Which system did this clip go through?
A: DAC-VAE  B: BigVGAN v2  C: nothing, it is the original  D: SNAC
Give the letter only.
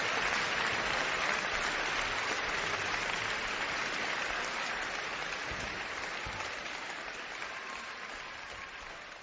C